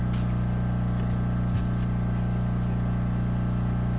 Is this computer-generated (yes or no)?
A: no